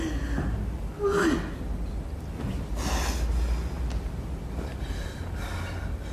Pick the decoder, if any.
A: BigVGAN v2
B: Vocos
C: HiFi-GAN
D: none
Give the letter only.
D